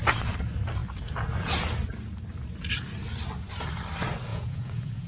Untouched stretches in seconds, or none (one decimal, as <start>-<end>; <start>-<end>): 0.0-4.3